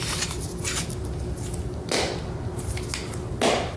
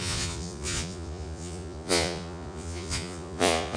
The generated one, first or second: second